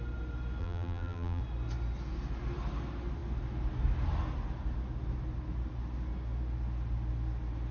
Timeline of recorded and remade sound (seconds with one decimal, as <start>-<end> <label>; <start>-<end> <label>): 0.0-0.6 recorded; 0.6-1.4 remade; 1.4-7.7 recorded